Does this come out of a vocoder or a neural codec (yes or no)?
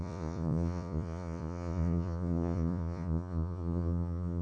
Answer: yes